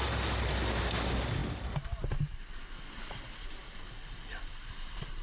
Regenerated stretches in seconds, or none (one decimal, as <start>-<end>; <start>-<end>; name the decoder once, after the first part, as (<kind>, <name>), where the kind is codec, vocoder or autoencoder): none